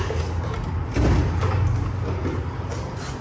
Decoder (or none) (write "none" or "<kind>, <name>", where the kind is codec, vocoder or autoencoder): none